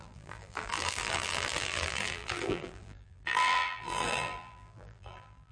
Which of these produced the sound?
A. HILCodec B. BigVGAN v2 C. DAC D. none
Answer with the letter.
B